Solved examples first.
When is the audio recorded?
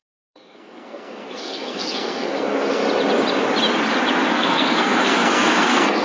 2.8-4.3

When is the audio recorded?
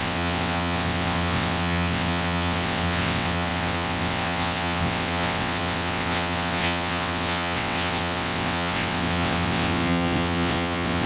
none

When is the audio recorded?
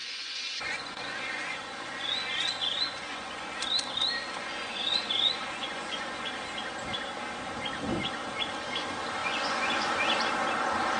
3.6-4.4; 6.3-9.2; 9.9-11.0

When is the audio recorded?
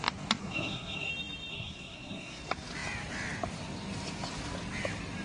0.0-0.4; 1.1-1.5; 2.4-5.2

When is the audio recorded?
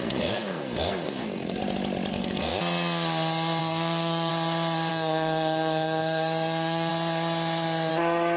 1.6-2.1; 2.5-3.6; 4.3-4.9; 6.9-7.9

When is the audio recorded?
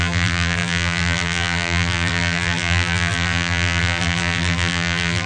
none